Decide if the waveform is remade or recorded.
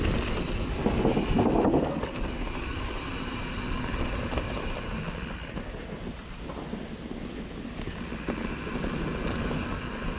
recorded